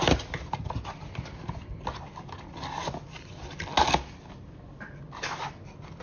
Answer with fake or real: real